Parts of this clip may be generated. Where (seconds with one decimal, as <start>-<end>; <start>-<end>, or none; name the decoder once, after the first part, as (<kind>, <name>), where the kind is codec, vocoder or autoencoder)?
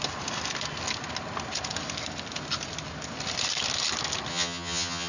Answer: 4.3-5.1 (vocoder, HiFi-GAN)